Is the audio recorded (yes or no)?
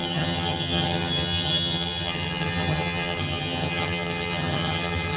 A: no